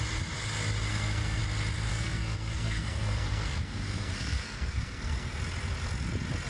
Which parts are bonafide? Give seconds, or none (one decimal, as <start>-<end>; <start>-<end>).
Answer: 0.0-0.9; 1.4-1.9; 5.4-6.5